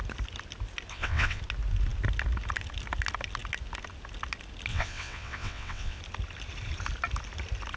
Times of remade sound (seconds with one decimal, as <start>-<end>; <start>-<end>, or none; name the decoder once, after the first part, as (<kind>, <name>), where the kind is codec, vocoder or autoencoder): 0.9-1.4 (vocoder, WaveNeXt); 4.7-6.0